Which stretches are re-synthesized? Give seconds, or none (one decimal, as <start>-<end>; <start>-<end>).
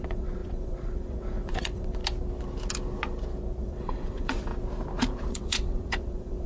0.0-2.0; 3.6-4.5; 5.2-6.5